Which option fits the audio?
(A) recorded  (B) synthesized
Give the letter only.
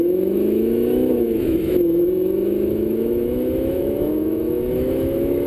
B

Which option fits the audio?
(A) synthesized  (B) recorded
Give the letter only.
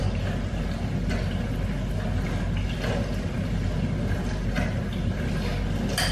B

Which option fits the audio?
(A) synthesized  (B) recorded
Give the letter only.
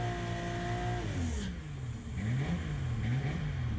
B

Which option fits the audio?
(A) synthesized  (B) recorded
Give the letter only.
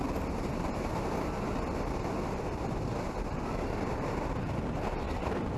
B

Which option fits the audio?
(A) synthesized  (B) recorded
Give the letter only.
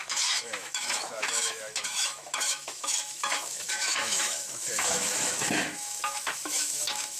A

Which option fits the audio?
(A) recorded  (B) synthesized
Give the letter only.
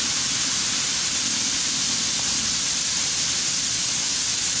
A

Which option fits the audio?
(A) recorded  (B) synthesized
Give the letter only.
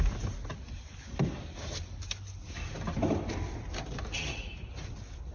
A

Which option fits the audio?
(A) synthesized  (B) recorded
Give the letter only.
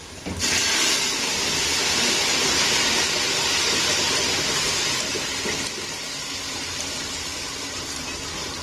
B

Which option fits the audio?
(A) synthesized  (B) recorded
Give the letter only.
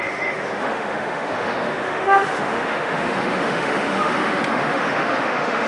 A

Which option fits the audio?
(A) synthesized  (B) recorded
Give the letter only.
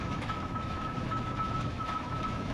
A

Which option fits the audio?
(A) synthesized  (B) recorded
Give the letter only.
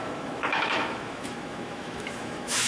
A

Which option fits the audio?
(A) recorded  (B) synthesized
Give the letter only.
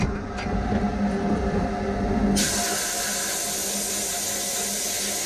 A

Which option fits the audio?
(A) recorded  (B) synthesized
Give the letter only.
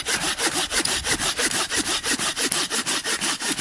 A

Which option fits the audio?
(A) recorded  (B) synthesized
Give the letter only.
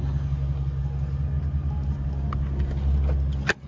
A